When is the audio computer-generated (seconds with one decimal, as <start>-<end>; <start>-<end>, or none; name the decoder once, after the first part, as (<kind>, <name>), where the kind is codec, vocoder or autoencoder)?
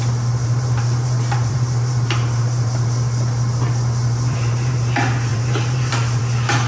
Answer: 0.4-2.9 (vocoder, BigVGAN v2); 4.0-4.8; 5.3-6.2